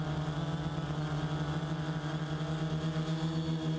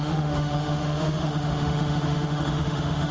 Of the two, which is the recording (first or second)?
first